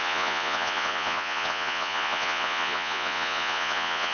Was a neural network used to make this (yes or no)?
yes